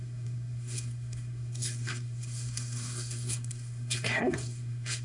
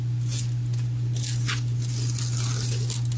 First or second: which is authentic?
second